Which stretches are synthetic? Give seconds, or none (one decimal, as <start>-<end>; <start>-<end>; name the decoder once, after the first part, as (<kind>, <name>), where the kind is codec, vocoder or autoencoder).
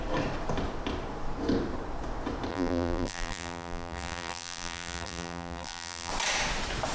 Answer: 2.5-6.1 (vocoder, BigVGAN v2)